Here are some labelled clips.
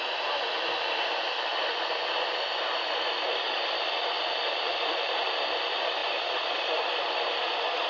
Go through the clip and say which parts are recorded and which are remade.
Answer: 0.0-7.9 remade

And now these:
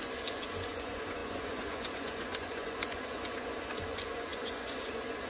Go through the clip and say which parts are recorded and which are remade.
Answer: 0.0-5.3 remade

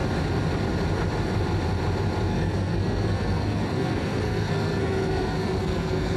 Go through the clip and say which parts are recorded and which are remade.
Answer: 0.0-2.3 recorded; 2.3-6.2 remade